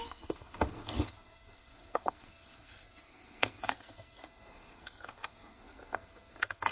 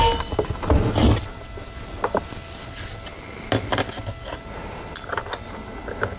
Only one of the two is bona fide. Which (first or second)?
second